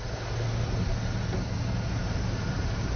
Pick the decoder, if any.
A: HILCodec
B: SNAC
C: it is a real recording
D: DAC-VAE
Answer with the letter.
C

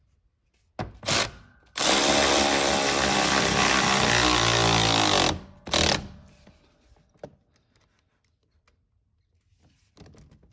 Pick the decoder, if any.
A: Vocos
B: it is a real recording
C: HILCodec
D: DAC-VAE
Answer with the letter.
B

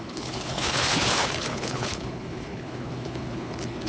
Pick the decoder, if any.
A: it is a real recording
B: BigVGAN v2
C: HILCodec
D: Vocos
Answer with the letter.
C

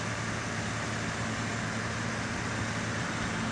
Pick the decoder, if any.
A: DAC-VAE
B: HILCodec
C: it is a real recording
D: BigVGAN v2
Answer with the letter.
C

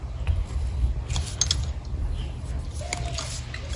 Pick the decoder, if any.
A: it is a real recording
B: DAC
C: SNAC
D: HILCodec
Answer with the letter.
A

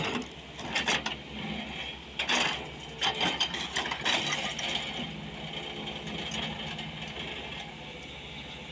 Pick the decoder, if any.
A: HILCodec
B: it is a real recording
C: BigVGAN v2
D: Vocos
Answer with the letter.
B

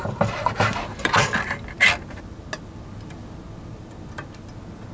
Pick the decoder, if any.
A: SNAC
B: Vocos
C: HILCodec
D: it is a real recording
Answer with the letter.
D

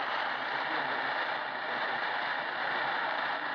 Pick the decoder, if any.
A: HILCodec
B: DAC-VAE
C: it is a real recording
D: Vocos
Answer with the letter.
C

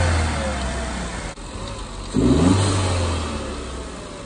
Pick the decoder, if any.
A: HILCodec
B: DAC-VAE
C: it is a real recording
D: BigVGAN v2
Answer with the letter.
C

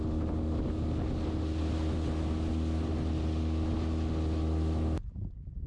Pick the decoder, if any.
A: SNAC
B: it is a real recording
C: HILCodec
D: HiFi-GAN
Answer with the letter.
B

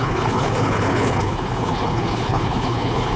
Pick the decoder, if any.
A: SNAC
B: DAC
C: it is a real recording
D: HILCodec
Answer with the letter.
D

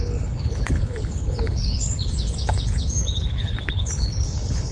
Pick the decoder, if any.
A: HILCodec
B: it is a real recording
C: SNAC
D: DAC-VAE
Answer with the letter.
A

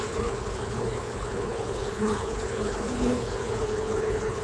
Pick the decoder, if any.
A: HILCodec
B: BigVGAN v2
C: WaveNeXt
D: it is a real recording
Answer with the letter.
A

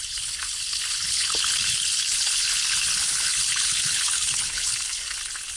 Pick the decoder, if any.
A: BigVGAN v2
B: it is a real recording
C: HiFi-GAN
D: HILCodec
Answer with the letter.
D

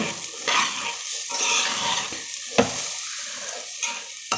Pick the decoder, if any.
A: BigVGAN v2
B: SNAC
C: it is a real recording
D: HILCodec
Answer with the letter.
C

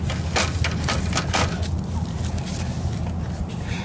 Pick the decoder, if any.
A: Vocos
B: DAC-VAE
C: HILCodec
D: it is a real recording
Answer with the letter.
D